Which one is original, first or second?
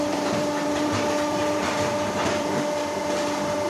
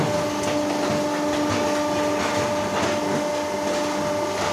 second